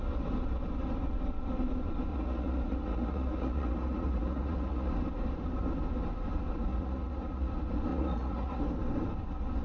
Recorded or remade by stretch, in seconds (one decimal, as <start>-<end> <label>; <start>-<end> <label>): 0.0-2.1 recorded; 2.1-4.9 remade; 4.9-6.7 recorded; 6.7-7.5 remade; 7.5-7.9 recorded; 7.9-8.6 remade; 8.6-9.6 recorded